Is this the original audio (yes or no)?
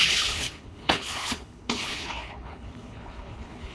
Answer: no